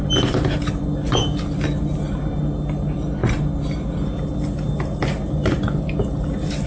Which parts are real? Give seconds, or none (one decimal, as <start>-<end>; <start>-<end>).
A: 0.0-6.7